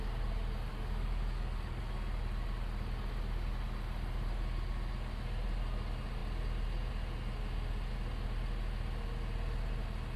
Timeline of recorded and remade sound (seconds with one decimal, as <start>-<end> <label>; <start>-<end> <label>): 0.0-0.7 recorded; 0.7-1.8 remade; 1.8-10.2 recorded